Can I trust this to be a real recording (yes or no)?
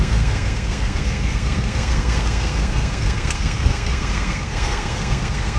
no